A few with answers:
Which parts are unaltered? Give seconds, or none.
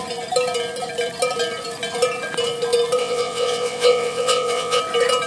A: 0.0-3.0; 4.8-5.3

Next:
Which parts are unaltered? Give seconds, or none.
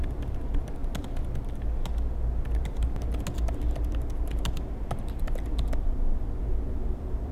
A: 0.0-7.3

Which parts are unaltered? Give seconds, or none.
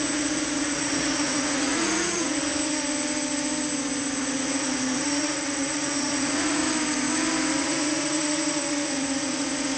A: 2.4-4.2; 6.6-7.6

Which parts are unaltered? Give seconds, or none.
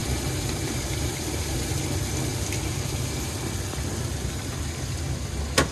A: 1.8-5.7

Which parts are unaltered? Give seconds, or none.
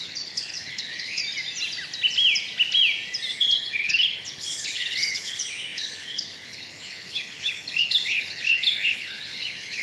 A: 1.2-3.3